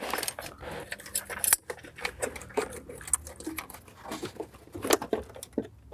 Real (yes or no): yes